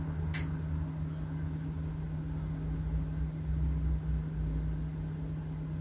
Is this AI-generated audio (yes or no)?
no